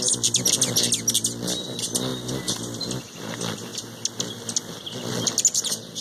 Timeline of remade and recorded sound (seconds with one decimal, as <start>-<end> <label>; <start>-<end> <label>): 0.0-2.1 recorded; 2.1-2.8 remade; 2.8-6.0 recorded